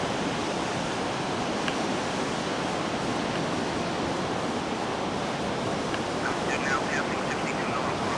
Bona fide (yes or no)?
yes